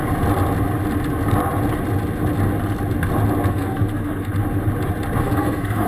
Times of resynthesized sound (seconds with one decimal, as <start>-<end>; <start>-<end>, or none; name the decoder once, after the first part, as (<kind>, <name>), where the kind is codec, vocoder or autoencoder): 3.5-4.3 (codec, SNAC); 5.2-5.9